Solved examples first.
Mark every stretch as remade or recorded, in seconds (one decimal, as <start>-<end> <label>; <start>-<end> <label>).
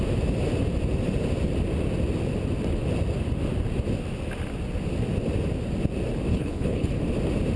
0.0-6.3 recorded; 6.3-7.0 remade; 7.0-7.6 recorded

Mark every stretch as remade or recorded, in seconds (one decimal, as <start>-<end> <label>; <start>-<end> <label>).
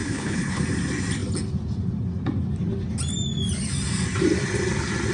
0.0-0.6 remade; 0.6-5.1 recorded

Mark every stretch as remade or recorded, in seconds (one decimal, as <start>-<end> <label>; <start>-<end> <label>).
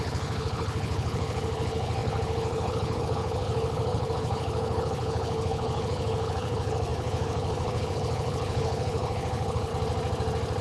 0.0-9.7 remade; 9.7-10.6 recorded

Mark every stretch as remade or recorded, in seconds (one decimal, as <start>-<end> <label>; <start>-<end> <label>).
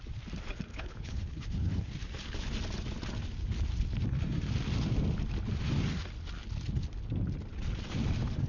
0.0-0.7 recorded; 0.7-1.9 remade; 1.9-8.5 recorded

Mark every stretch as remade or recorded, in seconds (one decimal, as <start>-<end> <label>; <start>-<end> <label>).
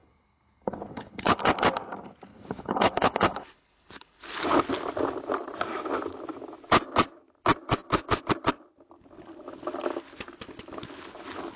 0.0-1.4 remade; 1.4-2.3 recorded; 2.3-4.4 remade; 4.4-11.6 recorded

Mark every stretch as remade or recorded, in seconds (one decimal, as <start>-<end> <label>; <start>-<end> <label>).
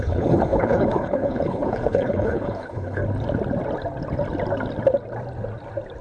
0.0-3.0 remade; 3.0-6.0 recorded